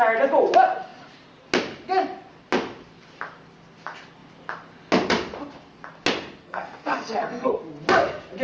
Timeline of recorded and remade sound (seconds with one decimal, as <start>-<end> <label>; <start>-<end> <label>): 0.0-6.4 recorded; 6.4-7.6 remade; 7.6-8.4 recorded